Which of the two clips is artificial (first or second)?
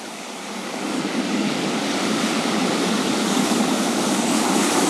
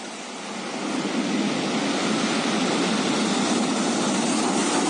first